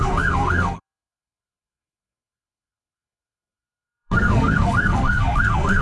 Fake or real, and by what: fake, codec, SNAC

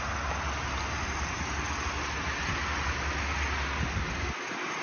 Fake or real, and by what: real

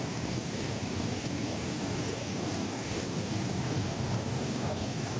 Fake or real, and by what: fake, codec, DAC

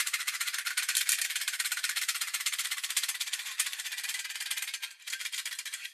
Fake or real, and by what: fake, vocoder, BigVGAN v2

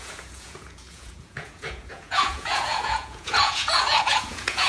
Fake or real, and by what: fake, vocoder, Vocos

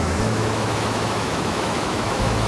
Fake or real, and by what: fake, autoencoder, DAC-VAE